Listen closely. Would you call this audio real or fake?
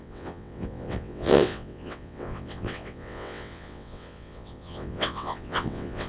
fake